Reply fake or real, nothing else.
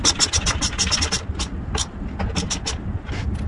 real